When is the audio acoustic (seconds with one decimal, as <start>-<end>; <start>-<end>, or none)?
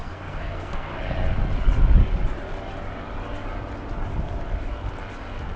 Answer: 1.0-5.6